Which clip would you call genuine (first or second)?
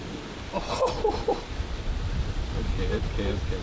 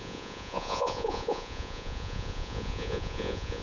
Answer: first